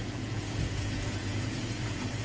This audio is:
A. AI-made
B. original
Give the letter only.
A